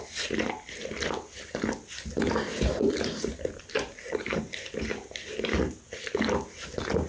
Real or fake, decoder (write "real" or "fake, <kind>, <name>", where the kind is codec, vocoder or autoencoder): real